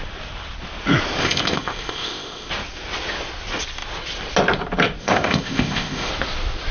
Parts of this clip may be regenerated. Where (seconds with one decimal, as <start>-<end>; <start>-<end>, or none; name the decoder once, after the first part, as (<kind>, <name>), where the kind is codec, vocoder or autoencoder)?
1.2-2.5 (codec, ZipCodec); 5.0-6.1